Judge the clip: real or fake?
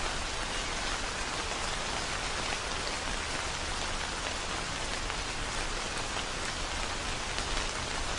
real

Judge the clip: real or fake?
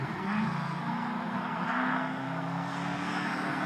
fake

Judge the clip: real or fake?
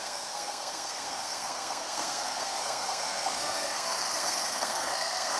fake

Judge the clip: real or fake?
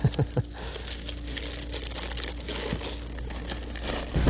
real